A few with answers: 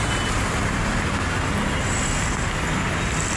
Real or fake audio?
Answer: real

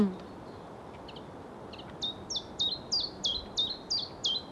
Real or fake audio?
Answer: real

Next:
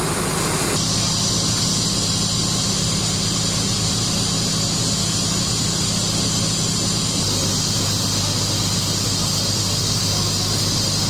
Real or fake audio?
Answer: real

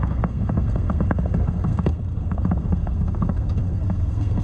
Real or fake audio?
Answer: fake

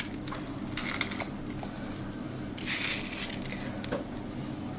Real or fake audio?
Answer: real